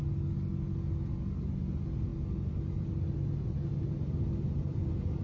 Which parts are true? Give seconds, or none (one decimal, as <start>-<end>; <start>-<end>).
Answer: 0.0-5.2